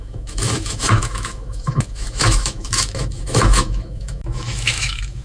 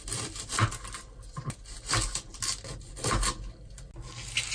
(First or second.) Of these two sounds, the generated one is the first